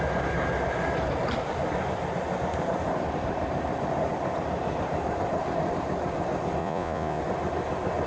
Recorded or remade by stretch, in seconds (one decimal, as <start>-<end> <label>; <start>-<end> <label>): 0.0-6.6 recorded; 6.6-7.2 remade; 7.2-8.1 recorded